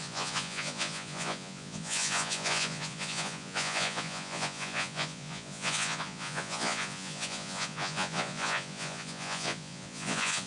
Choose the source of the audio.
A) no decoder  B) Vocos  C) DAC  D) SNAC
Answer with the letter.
B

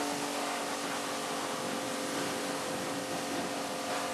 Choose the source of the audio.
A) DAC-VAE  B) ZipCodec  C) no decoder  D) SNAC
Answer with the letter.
C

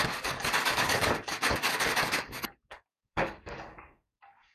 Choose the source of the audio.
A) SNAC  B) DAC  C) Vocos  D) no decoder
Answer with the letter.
B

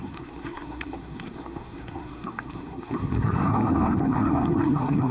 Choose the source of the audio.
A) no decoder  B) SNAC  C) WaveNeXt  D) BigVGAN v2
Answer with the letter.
B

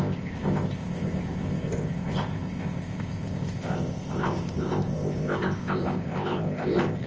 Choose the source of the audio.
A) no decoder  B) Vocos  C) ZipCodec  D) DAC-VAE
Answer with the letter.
C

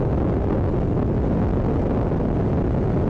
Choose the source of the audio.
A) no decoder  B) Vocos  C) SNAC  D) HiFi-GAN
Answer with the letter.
A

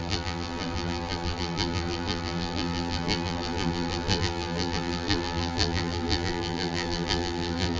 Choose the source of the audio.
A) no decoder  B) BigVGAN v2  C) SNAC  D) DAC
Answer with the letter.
B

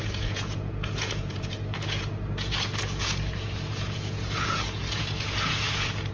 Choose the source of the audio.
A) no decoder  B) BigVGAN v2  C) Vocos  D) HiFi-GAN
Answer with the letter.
C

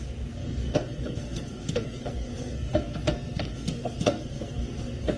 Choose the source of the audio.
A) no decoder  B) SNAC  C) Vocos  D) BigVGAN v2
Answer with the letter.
B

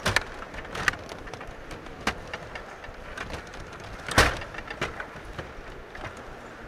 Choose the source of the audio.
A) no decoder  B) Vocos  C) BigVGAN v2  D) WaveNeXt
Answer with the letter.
A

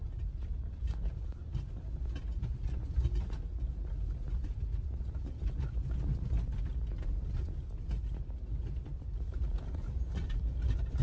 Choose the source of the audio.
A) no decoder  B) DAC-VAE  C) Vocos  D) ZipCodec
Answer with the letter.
A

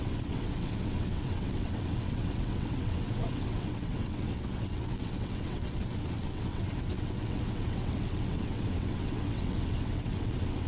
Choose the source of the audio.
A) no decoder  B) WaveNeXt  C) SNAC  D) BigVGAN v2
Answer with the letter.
B